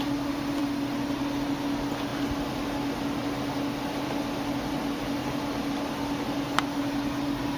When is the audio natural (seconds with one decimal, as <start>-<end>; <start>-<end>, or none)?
0.0-5.2; 5.7-7.6